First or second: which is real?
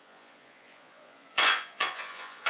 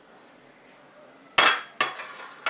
second